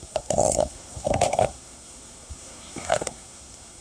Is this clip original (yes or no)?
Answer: no